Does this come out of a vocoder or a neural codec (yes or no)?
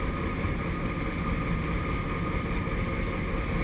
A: no